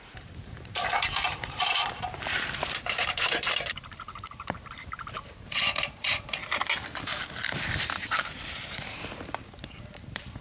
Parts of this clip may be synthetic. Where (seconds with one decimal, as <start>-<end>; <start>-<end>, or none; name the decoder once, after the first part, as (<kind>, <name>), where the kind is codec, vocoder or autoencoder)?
0.0-6.4 (vocoder, BigVGAN v2); 7.4-10.4